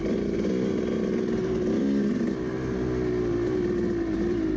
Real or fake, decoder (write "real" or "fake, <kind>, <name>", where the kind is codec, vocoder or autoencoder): real